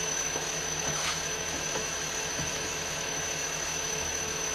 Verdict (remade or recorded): remade